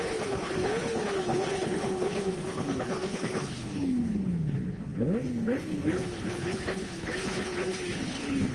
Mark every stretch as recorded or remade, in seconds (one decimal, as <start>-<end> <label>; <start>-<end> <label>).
0.0-8.5 remade

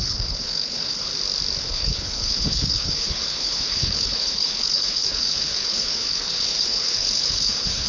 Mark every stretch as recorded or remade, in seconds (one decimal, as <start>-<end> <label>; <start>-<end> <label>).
0.0-1.1 remade; 1.1-1.6 recorded; 1.6-7.9 remade

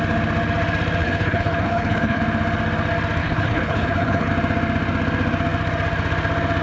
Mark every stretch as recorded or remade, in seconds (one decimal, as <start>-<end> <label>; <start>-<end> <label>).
0.0-1.0 recorded; 1.0-2.2 remade; 2.2-3.2 recorded; 3.2-4.3 remade; 4.3-6.6 recorded

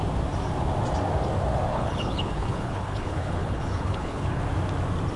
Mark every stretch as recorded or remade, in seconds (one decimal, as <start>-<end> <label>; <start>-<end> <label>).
0.0-1.7 recorded; 1.7-4.4 remade; 4.4-5.2 recorded

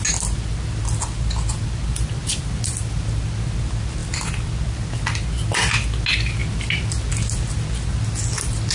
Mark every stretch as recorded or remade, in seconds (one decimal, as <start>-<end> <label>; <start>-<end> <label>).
0.0-8.7 recorded

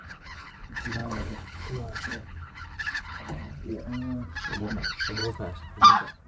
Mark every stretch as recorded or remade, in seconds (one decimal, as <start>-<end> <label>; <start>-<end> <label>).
0.0-3.7 remade; 3.7-4.6 recorded; 4.6-5.2 remade; 5.2-6.3 recorded

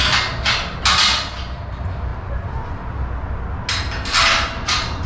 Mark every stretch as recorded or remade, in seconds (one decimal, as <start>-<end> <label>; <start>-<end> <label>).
0.0-5.1 recorded